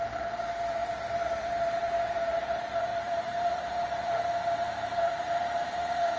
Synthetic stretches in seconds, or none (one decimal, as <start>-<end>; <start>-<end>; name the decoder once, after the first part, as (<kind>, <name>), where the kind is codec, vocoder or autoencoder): 0.8-1.5 (vocoder, BigVGAN v2); 2.9-4.0